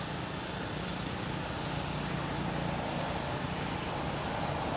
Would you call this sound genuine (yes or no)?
yes